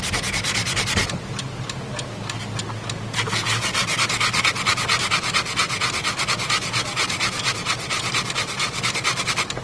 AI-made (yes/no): no